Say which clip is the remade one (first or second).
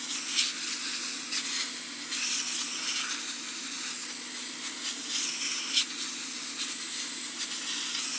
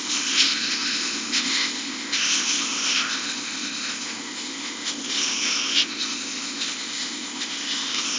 second